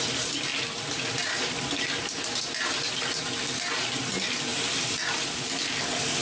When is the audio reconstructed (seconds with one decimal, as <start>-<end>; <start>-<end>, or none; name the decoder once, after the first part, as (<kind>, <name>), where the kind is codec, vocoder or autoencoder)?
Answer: 0.5-1.6 (vocoder, BigVGAN v2)